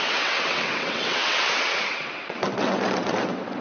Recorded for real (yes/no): no